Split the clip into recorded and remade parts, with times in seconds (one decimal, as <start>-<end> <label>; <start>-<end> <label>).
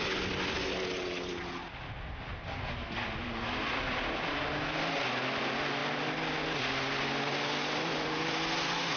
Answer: 0.0-9.0 recorded